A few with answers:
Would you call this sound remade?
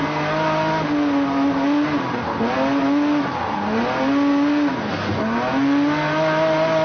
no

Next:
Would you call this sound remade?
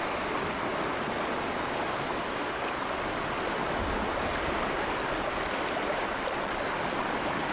no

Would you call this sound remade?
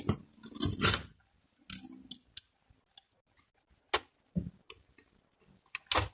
no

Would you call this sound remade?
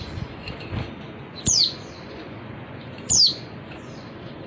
yes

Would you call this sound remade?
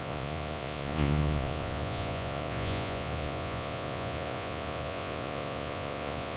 yes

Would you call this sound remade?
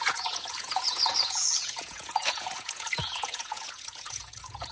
yes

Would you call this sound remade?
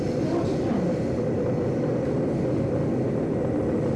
no